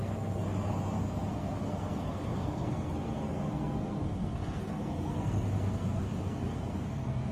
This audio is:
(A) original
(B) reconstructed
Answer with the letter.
B